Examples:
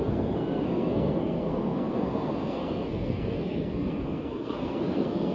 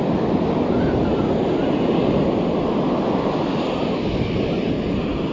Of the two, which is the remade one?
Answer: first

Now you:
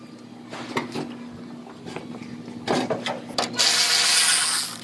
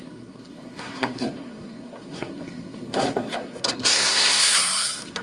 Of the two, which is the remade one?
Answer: second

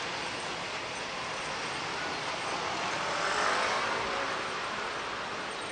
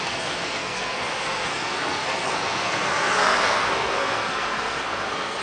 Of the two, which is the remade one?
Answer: second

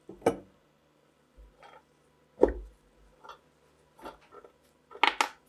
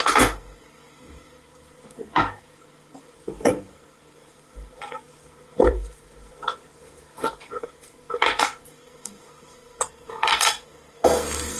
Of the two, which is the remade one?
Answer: second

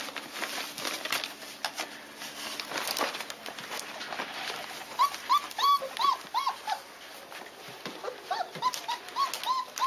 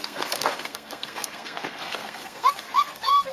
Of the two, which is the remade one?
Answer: second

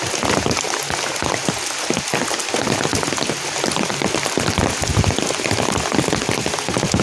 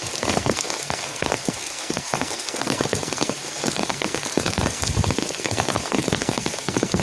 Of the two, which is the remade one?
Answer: second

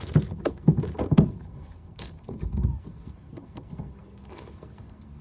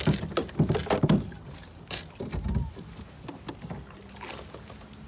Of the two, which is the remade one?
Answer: first